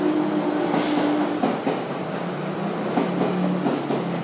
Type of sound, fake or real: real